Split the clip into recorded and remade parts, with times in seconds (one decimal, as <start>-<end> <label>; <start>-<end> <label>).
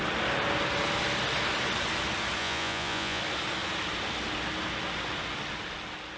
0.0-2.4 recorded; 2.4-3.2 remade; 3.2-6.2 recorded